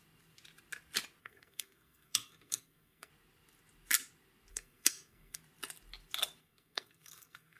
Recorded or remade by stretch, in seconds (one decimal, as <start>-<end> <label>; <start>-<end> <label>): 0.0-1.2 recorded; 1.2-3.1 remade; 3.1-4.5 recorded; 4.5-5.4 remade; 5.4-6.4 recorded; 6.4-7.6 remade